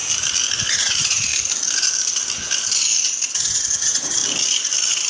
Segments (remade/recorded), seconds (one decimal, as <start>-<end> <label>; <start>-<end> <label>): 0.0-0.6 recorded; 0.6-1.3 remade; 1.3-3.3 recorded; 3.3-4.2 remade; 4.2-5.1 recorded